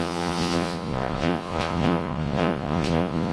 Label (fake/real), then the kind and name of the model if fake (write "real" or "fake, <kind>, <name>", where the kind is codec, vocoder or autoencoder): fake, vocoder, Vocos